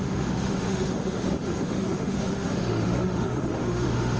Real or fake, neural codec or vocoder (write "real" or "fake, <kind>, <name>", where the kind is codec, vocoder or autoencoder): fake, autoencoder, DAC-VAE